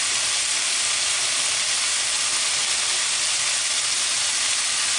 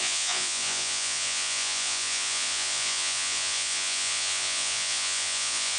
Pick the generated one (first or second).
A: second